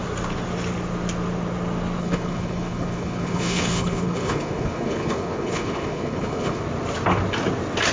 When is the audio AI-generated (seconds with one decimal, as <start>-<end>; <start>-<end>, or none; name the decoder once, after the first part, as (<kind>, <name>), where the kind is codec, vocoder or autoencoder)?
2.0-6.6 (codec, HILCodec)